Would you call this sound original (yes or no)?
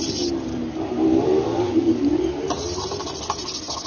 yes